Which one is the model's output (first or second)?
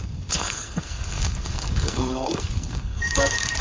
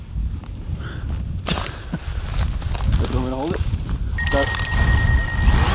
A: first